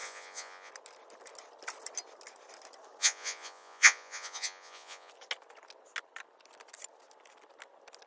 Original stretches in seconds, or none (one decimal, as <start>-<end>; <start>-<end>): 0.7-3.0; 5.1-8.1